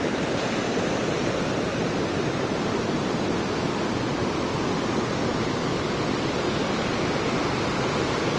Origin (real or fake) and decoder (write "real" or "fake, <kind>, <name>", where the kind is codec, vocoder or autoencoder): real